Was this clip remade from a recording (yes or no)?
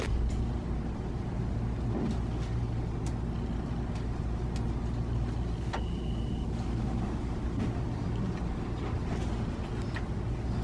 no